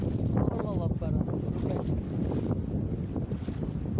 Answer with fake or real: real